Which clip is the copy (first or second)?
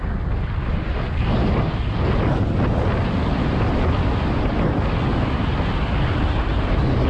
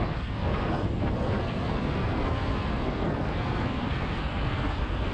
second